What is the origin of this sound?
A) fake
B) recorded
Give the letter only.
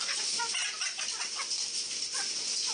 B